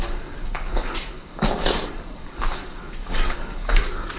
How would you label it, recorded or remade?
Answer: remade